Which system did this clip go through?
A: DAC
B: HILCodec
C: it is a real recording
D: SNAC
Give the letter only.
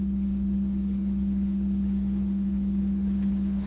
B